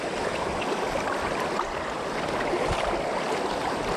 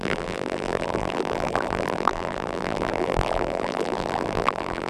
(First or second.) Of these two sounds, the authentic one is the first